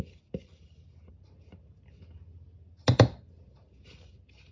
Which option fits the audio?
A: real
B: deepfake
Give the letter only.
A